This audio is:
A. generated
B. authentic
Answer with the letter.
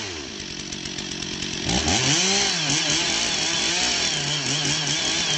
B